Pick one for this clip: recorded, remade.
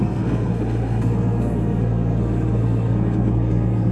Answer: remade